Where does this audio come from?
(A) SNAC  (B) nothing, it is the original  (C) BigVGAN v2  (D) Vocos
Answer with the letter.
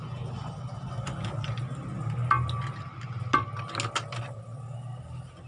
B